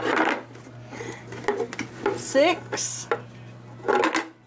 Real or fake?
real